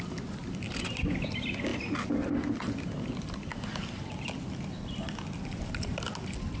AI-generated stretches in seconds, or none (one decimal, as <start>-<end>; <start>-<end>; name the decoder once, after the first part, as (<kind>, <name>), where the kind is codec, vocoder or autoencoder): none